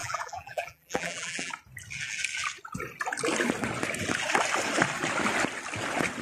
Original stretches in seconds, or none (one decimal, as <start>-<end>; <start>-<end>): 1.5-6.2